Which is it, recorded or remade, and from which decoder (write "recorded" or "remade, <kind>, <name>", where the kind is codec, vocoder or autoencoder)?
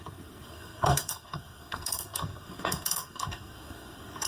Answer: remade, codec, SNAC